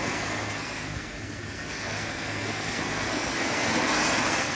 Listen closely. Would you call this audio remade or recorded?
remade